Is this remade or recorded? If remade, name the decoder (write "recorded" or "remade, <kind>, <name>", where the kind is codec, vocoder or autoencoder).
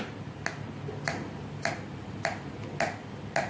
recorded